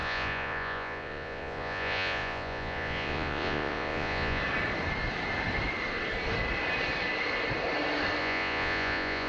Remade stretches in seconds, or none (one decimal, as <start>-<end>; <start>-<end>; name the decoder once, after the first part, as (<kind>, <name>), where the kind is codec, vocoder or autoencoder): 0.0-4.4 (vocoder, Vocos); 8.2-9.3